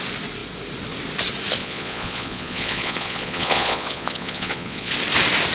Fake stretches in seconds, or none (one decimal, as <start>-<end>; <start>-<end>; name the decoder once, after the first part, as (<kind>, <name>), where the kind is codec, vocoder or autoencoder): 1.6-4.9 (vocoder, Vocos)